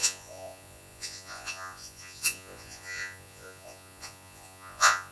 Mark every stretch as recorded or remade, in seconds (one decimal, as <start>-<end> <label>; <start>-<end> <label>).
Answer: 0.0-5.1 remade